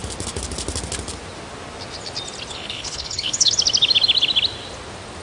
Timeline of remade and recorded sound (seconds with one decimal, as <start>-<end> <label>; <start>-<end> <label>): 0.0-2.5 recorded; 2.5-3.5 remade; 3.5-5.2 recorded